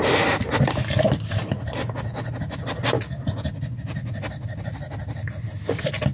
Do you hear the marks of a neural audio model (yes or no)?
no